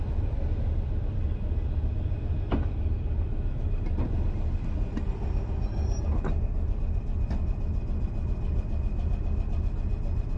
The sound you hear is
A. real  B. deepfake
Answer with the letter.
A